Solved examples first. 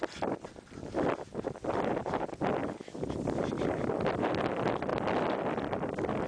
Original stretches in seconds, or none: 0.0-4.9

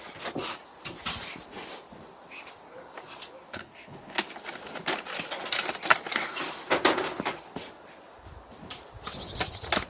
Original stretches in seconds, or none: 0.0-3.5; 4.2-9.9

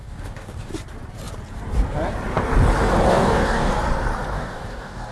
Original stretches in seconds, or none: 0.7-3.1; 3.7-4.3

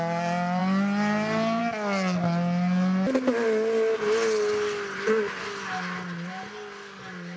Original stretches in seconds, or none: 0.0-7.4